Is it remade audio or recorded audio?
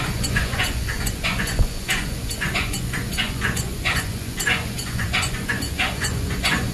remade